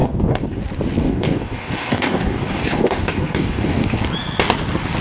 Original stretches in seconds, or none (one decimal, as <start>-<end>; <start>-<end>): 0.6-1.0; 4.0-5.0